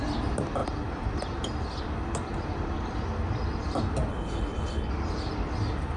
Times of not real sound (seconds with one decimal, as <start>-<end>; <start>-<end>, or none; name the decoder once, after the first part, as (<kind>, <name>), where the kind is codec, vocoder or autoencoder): 4.1-4.9 (codec, HILCodec)